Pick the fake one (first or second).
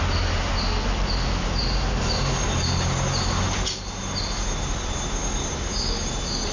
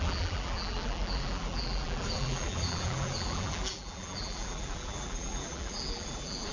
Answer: second